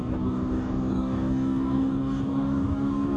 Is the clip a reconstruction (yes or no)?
yes